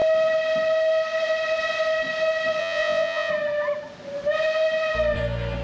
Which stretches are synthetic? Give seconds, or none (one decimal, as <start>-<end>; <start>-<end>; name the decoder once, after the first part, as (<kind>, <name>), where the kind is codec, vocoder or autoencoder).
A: 2.6-3.3 (vocoder, Vocos)